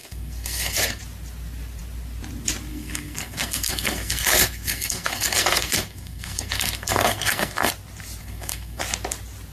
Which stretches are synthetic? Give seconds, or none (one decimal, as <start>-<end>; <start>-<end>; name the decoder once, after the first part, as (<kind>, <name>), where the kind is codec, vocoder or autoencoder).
0.0-1.0 (codec, SNAC); 2.7-7.7; 8.2-8.8